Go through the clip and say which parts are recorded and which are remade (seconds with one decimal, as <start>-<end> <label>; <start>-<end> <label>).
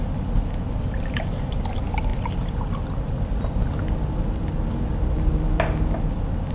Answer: 0.0-6.5 recorded